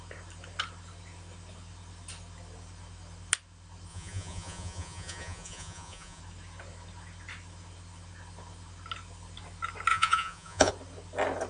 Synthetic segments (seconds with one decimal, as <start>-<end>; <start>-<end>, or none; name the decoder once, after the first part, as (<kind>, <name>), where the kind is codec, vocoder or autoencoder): 3.9-6.2 (vocoder, Vocos); 9.9-10.7